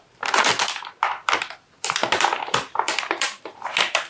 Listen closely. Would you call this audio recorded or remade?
recorded